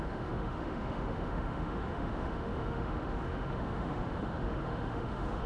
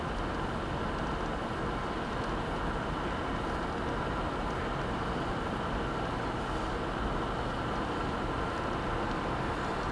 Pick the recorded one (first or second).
second